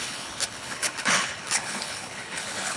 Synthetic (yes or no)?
yes